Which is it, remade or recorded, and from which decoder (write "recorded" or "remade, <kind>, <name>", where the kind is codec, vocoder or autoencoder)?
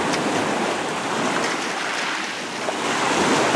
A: recorded